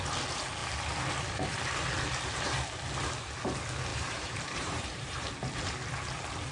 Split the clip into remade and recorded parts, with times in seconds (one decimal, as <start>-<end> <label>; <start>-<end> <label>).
0.0-3.9 recorded; 3.9-5.3 remade; 5.3-6.5 recorded